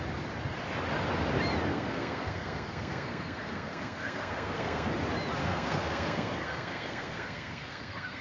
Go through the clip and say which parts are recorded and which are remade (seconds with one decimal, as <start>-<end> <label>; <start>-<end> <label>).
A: 0.0-1.7 recorded; 1.7-4.9 remade; 4.9-5.4 recorded; 5.4-8.2 remade